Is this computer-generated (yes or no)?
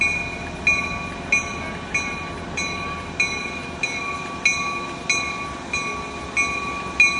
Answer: no